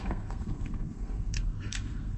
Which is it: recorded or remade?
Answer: remade